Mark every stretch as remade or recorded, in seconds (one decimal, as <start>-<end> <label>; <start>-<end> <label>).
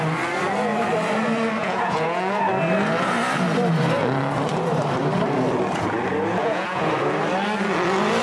0.0-1.6 recorded; 1.6-2.4 remade; 2.4-6.4 recorded; 6.4-6.9 remade; 6.9-8.2 recorded